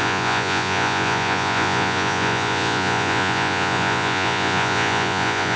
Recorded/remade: remade